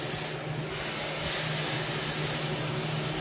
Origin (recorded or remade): recorded